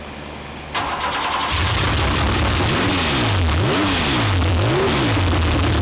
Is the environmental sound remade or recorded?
recorded